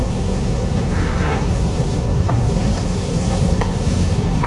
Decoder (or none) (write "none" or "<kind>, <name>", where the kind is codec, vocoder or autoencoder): codec, SNAC